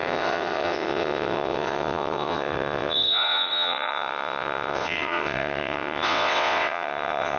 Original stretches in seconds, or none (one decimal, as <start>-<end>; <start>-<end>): none